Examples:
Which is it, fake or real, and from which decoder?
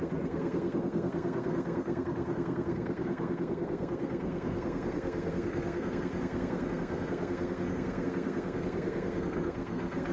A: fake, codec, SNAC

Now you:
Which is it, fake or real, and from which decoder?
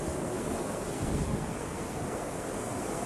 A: fake, codec, SNAC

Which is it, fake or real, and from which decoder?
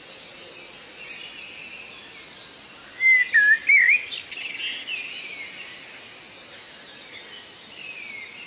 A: real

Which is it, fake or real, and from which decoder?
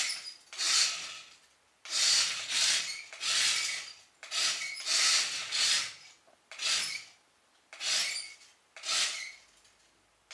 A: real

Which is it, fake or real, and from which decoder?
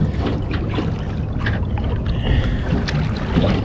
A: real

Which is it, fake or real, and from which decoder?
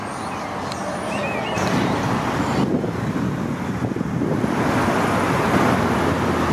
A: real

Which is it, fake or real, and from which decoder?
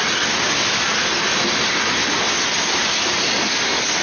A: real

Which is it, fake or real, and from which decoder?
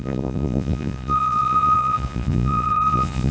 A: fake, vocoder, Vocos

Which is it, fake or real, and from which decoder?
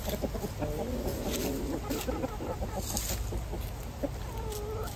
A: real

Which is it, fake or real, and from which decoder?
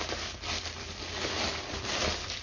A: real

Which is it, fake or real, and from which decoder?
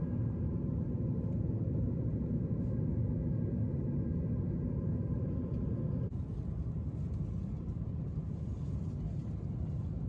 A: real